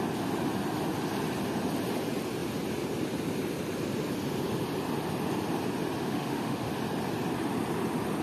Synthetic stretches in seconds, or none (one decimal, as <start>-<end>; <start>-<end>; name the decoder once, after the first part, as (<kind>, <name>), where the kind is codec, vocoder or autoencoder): 6.0-6.7 (autoencoder, DAC-VAE)